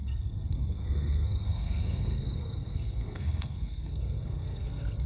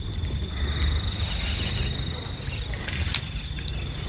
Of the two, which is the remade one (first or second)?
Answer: first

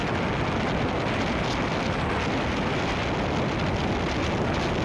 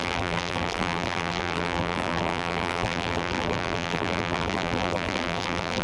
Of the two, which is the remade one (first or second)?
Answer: second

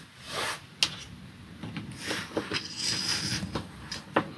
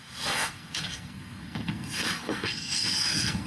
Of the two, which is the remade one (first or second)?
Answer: second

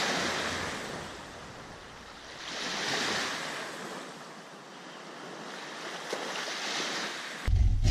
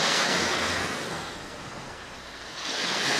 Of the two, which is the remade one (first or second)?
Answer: second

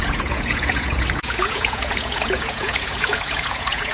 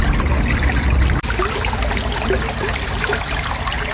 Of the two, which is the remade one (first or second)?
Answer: first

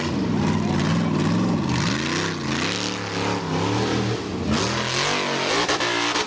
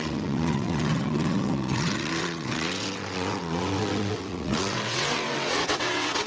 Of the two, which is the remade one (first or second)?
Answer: second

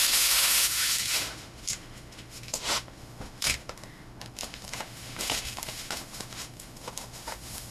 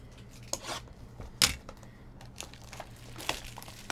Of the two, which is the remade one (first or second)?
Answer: first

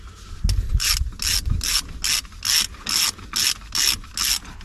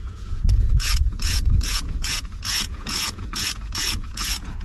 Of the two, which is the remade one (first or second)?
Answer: second